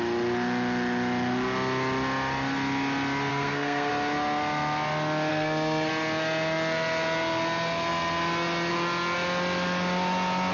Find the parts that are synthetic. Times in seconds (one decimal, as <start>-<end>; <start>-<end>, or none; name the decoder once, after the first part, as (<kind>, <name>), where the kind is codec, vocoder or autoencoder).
3.3-3.9 (codec, SNAC); 5.3-5.9